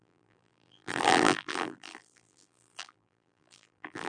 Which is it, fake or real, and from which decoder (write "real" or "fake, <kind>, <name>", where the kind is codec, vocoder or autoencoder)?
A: fake, vocoder, BigVGAN v2